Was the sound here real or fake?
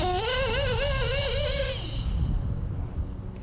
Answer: real